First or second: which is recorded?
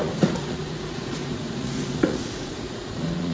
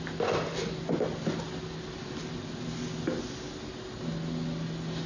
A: second